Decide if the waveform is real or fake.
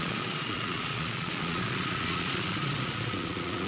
fake